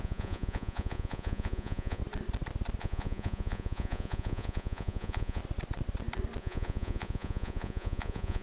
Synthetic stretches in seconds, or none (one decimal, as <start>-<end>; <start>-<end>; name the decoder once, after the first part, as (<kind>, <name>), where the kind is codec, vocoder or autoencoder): 0.0-2.0 (vocoder, Vocos); 2.8-5.4; 6.4-8.4